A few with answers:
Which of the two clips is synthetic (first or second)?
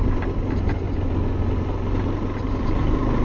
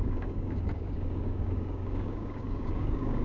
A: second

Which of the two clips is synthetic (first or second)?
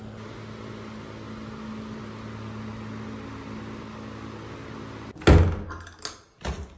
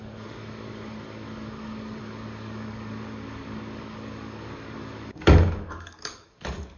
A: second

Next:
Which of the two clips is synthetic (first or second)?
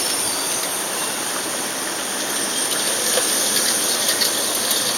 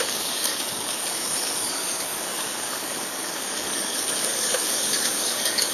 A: second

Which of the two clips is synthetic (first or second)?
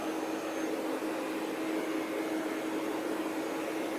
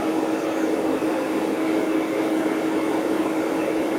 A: second